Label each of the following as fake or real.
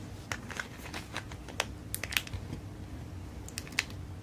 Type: real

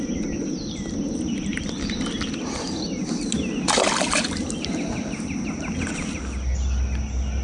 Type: real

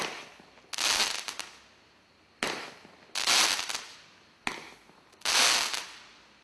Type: real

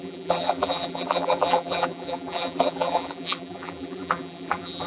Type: fake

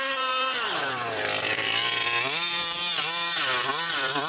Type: fake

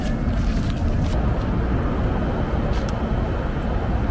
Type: real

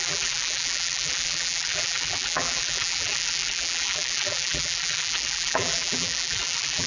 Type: fake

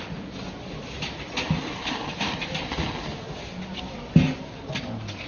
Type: real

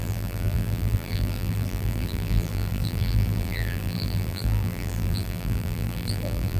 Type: fake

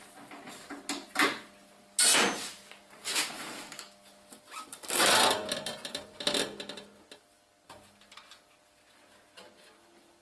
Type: real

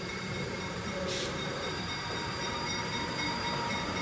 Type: fake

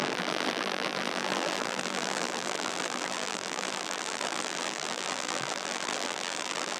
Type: fake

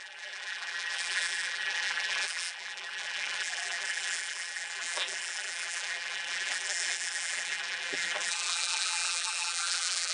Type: fake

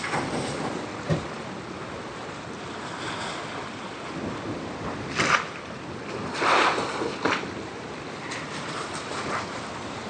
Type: real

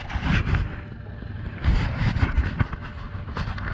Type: real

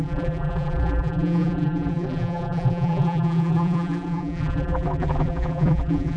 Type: fake